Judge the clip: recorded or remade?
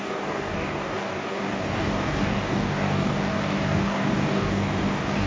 remade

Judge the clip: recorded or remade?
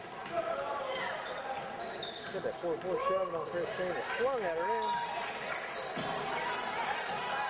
recorded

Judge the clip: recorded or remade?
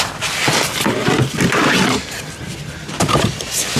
recorded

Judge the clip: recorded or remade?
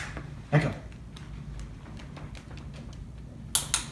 recorded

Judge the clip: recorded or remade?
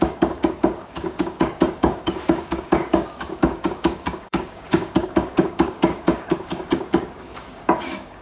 remade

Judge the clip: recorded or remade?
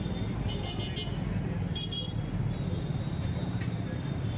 recorded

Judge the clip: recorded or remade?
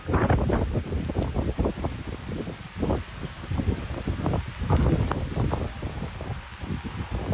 recorded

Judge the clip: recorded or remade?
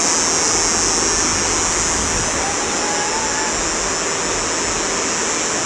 recorded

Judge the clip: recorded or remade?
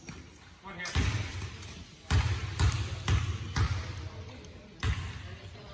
recorded